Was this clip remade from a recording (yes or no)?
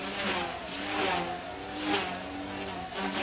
no